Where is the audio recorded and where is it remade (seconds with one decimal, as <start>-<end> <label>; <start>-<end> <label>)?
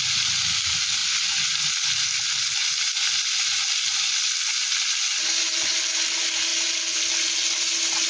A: 0.0-8.1 recorded